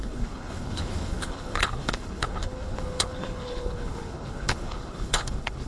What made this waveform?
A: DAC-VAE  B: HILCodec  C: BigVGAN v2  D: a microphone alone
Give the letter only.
B